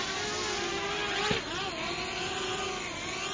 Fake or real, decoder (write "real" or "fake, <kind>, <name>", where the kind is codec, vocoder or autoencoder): real